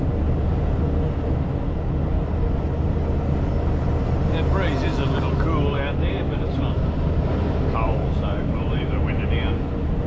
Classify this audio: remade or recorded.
recorded